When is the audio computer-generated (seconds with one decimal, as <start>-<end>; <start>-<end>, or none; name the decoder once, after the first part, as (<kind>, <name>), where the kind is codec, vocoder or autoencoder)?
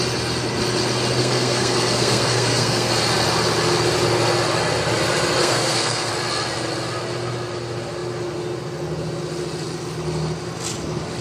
1.2-2.9 (codec, SNAC); 5.4-6.1